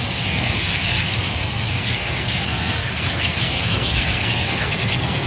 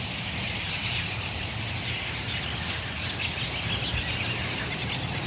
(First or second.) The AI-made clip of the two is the first